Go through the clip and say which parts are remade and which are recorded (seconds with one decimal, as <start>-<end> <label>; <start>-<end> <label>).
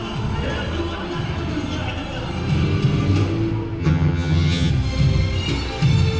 0.0-3.8 recorded; 3.8-4.7 remade; 4.7-6.2 recorded